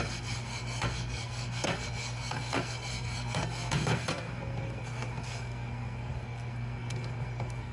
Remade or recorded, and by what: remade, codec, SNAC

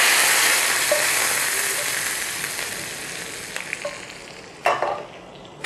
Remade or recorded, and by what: recorded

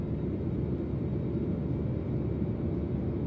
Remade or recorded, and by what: recorded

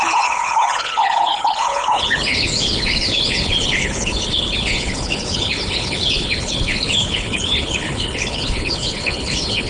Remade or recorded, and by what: remade, codec, HILCodec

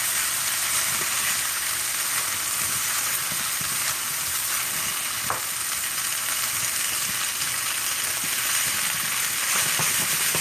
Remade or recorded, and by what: recorded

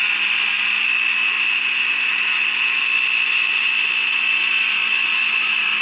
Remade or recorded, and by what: recorded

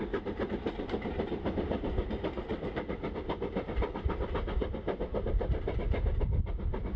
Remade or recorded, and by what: remade, vocoder, BigVGAN v2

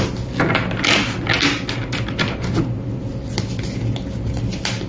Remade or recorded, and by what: recorded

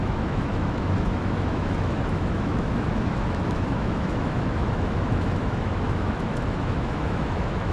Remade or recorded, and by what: remade, autoencoder, DAC-VAE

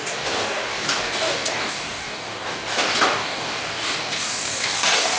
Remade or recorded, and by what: remade, codec, DAC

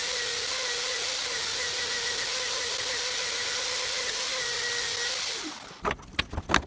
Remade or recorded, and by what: recorded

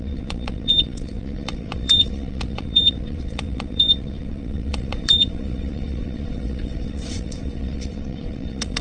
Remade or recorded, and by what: remade, vocoder, WaveNeXt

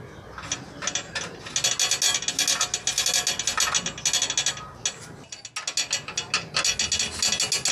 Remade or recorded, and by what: recorded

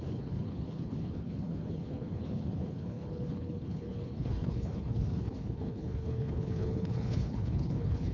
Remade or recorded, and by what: remade, codec, HILCodec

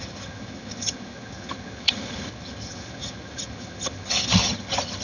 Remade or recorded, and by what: remade, vocoder, HiFi-GAN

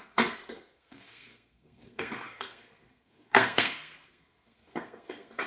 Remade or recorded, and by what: remade, codec, SNAC